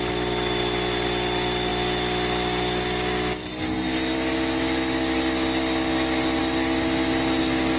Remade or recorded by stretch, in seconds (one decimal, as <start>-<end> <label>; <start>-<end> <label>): 0.0-7.8 recorded